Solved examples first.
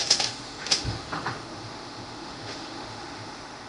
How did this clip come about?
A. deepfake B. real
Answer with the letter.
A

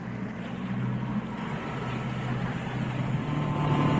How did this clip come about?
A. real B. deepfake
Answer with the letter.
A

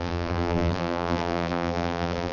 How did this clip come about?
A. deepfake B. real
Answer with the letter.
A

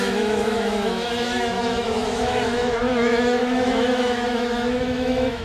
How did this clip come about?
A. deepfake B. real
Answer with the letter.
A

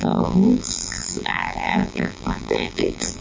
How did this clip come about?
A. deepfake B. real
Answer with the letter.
A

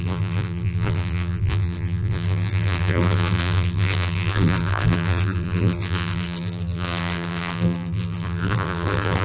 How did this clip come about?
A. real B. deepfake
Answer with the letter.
B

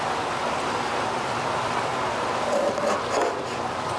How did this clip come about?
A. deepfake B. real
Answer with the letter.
B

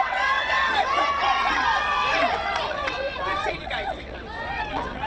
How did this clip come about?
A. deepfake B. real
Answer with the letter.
A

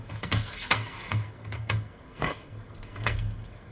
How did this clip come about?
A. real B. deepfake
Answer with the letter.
B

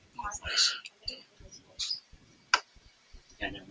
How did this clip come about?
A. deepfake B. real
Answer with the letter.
B